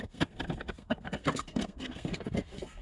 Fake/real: fake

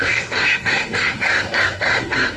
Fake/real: fake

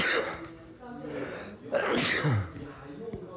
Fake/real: real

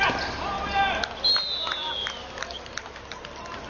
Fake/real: real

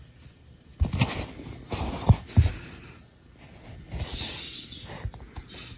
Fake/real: real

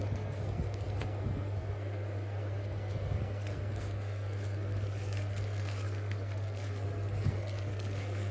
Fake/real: fake